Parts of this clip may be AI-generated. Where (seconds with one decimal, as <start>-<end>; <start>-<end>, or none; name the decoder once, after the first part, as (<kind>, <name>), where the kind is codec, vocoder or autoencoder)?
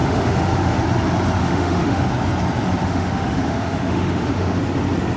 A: 0.0-0.8 (autoencoder, DAC-VAE); 1.4-2.1; 2.8-4.6